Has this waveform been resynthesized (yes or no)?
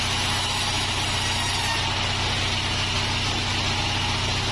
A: no